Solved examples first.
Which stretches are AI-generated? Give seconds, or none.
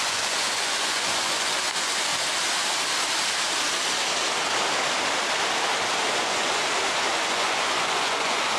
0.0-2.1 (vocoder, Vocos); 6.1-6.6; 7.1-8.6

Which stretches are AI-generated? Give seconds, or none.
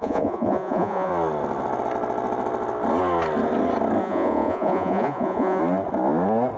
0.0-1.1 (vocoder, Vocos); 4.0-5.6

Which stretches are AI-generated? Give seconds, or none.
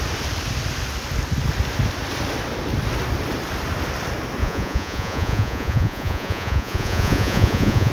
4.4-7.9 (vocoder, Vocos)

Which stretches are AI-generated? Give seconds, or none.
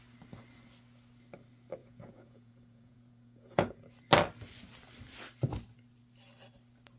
1.8-3.8 (vocoder, Vocos)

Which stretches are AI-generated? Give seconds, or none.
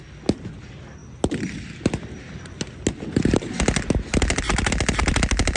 none